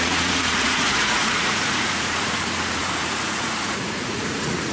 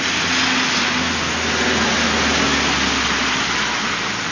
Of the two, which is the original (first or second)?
second